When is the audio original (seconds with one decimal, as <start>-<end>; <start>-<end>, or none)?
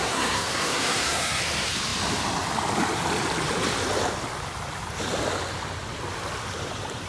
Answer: 1.4-7.1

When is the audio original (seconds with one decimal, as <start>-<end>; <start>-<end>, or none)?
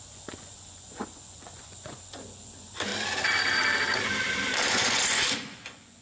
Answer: 2.9-4.7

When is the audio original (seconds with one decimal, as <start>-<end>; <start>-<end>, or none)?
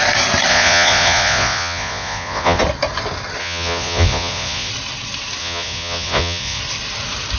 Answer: 0.0-0.5; 2.6-3.4; 4.7-5.4; 6.6-7.4